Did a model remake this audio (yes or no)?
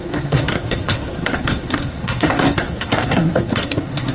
yes